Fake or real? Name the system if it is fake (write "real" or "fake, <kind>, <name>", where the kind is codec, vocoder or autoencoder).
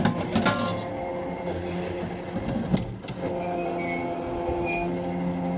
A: real